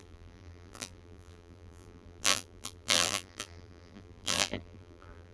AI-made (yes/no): yes